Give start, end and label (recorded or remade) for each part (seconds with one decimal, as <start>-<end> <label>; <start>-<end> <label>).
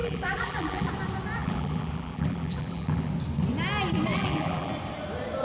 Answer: 0.0-0.9 remade; 0.9-1.4 recorded; 1.4-3.1 remade; 3.1-4.1 recorded; 4.1-4.7 remade; 4.7-5.4 recorded